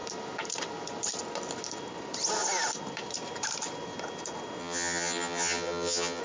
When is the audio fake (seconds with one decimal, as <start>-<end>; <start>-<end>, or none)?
4.6-6.2